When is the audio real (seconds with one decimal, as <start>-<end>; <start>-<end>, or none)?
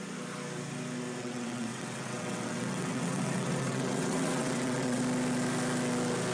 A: 0.0-1.2; 5.0-6.3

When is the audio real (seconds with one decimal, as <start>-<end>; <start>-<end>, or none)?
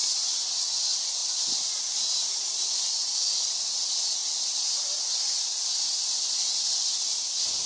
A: 0.7-7.7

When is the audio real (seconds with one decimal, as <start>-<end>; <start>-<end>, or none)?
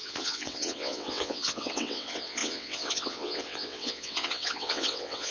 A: none